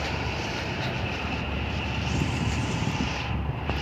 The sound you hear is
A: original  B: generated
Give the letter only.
B